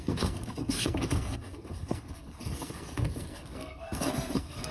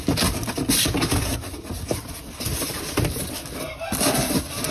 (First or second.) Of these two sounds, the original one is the second